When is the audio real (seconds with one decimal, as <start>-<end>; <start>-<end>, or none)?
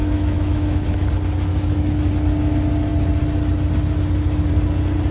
1.1-1.5; 2.1-5.1